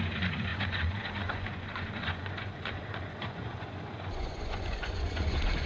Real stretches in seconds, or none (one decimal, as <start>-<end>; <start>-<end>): none